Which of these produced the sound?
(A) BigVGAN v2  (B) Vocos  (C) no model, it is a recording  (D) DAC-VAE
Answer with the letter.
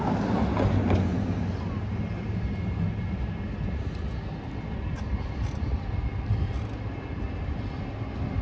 C